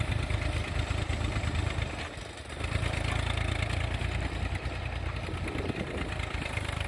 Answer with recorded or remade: recorded